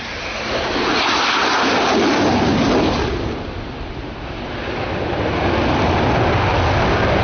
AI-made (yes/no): no